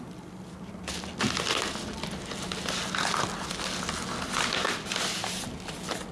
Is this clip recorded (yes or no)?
yes